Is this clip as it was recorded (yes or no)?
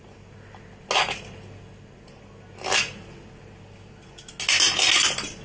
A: yes